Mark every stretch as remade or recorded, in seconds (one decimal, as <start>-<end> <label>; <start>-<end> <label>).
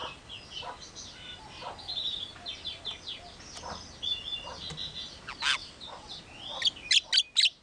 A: 0.0-5.6 recorded; 5.6-6.2 remade; 6.2-7.6 recorded